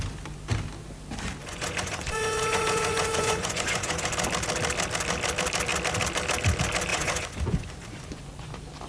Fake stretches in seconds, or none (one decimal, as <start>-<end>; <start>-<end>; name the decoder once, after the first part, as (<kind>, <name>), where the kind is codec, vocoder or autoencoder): 1.4-4.1 (vocoder, Vocos); 6.9-8.5